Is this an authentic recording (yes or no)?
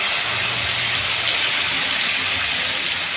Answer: yes